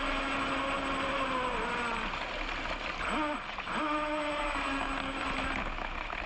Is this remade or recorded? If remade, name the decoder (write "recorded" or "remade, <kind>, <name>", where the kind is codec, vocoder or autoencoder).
recorded